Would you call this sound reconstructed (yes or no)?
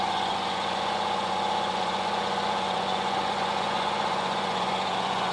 yes